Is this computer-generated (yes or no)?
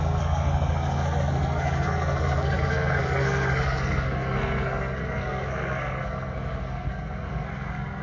yes